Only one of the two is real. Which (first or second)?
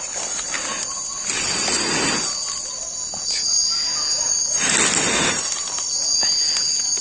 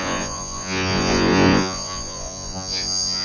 first